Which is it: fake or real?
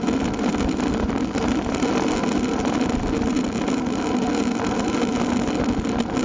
real